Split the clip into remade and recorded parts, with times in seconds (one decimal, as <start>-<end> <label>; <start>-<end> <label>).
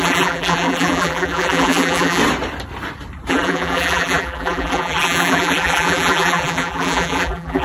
0.0-2.2 remade; 2.2-3.3 recorded; 3.3-7.6 remade